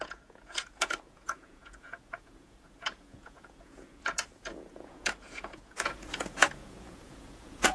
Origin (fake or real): fake